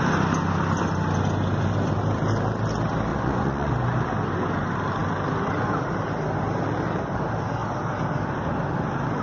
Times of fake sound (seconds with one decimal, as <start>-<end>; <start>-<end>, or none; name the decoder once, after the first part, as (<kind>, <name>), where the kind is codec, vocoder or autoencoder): 3.1-3.7 (vocoder, Vocos)